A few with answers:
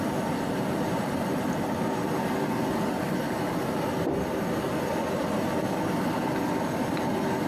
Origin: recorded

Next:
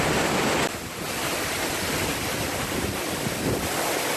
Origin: recorded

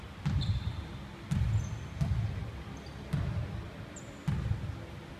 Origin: recorded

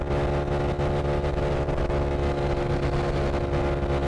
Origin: recorded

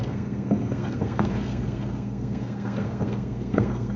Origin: remade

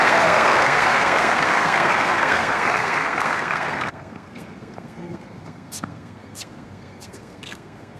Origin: remade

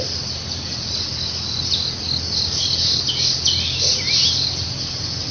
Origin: remade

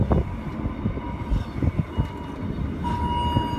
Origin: recorded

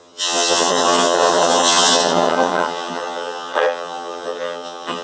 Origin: remade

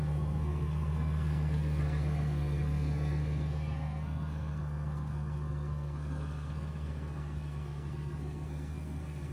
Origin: remade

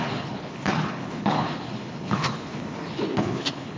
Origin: remade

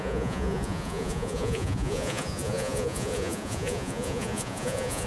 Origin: remade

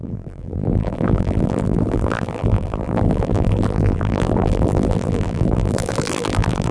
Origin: remade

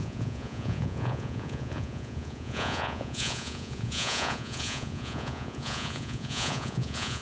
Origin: remade